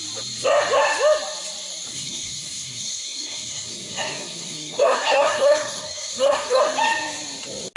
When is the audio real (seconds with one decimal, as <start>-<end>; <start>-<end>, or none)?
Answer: 0.0-1.9; 6.6-7.8